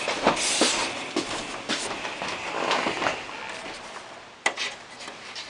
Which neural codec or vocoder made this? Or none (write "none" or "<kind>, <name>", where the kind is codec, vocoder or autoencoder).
none